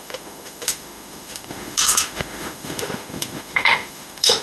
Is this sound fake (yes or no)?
yes